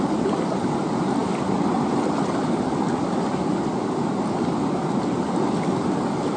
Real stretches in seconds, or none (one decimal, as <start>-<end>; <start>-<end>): 0.0-6.4